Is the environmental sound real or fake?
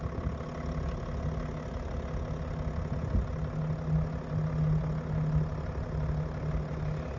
real